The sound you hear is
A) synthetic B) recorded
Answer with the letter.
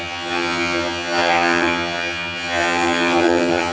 A